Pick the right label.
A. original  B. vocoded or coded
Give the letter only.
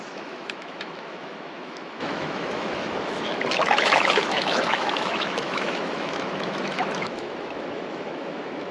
B